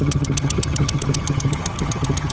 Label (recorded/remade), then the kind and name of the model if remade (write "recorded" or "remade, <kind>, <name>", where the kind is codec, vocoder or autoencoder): remade, vocoder, HiFi-GAN